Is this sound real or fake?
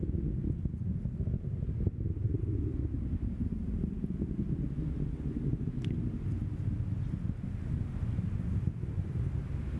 real